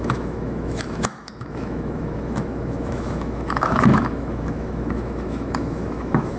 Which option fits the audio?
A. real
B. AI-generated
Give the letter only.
B